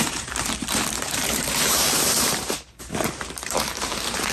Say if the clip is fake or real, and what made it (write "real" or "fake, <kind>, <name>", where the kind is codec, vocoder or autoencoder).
fake, vocoder, BigVGAN v2